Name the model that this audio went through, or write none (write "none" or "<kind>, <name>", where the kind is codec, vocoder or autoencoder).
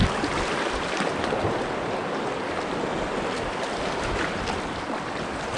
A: none